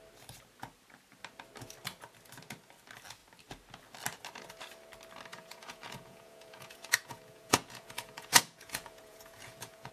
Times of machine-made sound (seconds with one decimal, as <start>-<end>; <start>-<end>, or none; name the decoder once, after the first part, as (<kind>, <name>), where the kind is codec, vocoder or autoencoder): 5.3-9.9 (vocoder, Vocos)

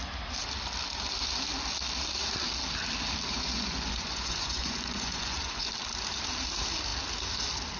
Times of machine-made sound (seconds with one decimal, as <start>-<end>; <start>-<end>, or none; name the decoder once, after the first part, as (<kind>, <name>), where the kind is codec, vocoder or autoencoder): 3.3-5.7 (vocoder, Vocos)

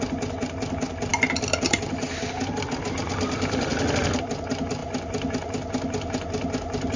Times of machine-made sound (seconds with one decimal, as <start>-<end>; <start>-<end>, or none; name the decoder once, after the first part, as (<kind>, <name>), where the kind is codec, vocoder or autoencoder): none

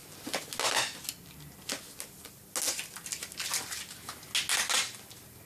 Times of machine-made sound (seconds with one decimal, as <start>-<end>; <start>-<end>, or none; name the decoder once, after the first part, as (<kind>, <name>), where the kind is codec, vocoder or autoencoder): none

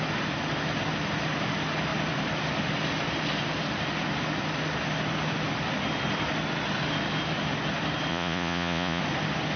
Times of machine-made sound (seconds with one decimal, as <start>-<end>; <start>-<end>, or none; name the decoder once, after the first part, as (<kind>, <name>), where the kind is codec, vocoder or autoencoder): 8.1-9.0 (vocoder, Vocos)

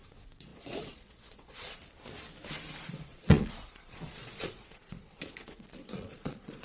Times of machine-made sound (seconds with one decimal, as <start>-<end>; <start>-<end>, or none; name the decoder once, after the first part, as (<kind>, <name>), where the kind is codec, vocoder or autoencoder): 0.0-1.8 (vocoder, Vocos); 2.9-6.6

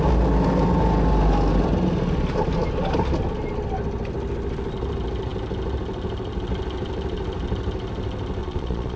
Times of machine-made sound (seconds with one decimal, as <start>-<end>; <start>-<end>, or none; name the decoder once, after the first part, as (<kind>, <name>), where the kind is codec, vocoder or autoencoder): 8.4-9.0 (vocoder, Vocos)